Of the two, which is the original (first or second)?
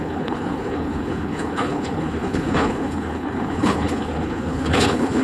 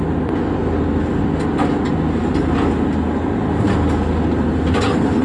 second